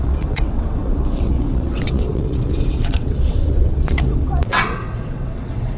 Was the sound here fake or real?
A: fake